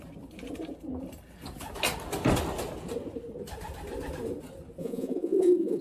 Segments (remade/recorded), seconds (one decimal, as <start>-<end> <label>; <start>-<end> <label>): 0.0-4.8 recorded; 4.8-5.8 remade